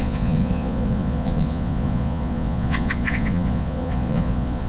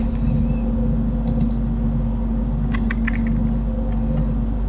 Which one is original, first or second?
second